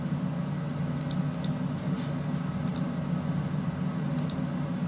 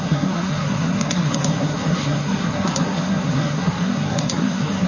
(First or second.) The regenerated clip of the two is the second